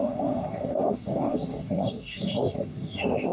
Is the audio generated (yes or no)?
yes